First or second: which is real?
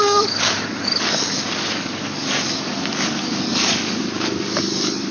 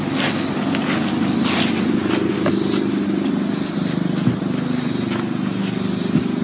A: second